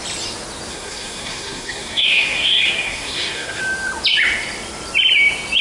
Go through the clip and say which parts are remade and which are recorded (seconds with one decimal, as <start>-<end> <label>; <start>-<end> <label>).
0.0-0.7 recorded; 0.7-3.6 remade; 3.6-5.6 recorded